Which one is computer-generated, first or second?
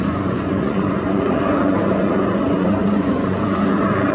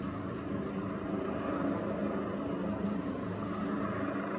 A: first